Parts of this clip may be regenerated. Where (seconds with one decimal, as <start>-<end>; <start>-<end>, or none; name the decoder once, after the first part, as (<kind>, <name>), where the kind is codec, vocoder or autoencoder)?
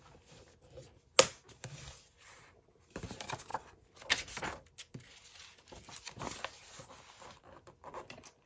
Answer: none